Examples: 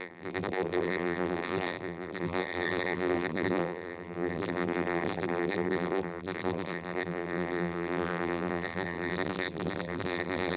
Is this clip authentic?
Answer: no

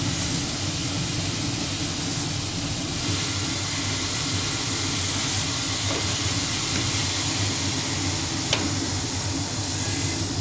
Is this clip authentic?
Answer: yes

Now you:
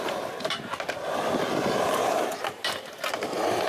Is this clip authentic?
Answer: no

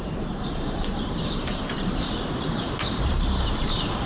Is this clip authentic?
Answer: no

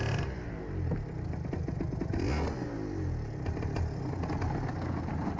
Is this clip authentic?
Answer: yes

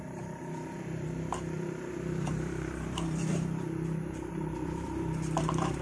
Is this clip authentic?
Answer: no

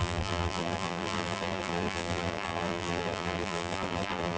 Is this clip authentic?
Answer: no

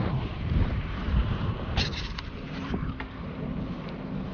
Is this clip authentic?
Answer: no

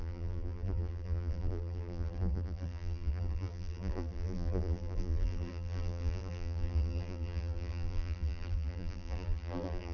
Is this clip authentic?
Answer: no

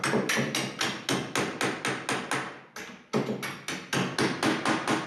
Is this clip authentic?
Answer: yes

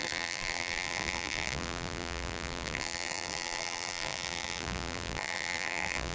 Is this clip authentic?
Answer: no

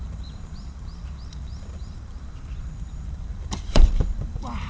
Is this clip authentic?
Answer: no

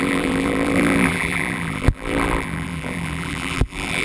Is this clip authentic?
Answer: no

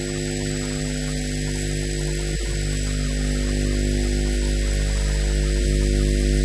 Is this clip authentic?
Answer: yes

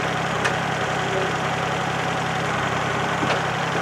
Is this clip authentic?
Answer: no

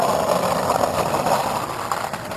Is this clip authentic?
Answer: yes